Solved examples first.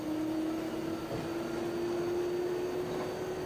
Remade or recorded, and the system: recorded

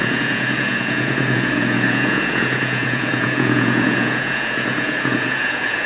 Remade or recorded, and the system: remade, vocoder, Vocos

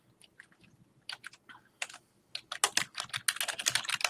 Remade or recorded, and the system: recorded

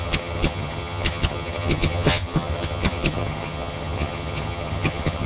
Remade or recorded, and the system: remade, vocoder, HiFi-GAN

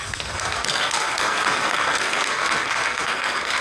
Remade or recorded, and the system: remade, codec, SNAC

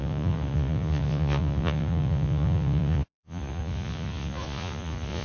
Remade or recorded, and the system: remade, vocoder, Vocos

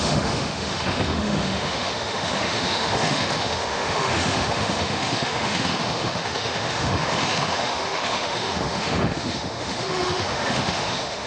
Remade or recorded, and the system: remade, autoencoder, DAC-VAE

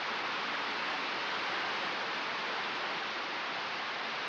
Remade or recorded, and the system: recorded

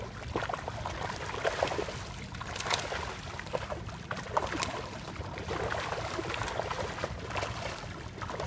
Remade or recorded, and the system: recorded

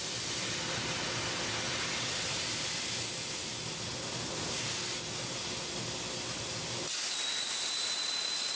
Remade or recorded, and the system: recorded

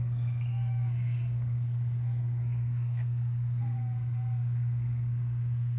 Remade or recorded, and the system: remade, codec, SNAC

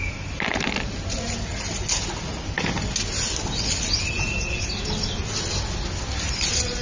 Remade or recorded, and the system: recorded